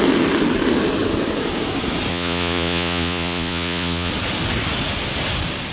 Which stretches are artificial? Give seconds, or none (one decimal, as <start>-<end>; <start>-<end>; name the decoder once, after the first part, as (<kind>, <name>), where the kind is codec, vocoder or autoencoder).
2.1-4.1 (vocoder, Vocos)